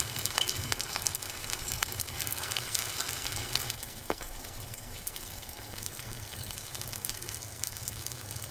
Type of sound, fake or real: fake